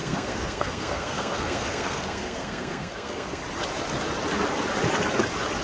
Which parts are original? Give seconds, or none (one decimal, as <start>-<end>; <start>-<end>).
3.4-5.6